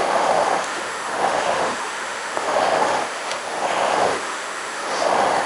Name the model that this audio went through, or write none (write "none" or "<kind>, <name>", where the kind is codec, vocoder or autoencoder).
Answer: autoencoder, DAC-VAE